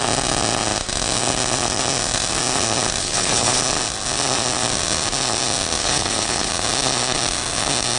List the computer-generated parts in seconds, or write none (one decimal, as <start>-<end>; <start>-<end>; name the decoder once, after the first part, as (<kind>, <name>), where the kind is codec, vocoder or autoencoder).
3.0-3.6 (codec, HILCodec); 5.8-6.5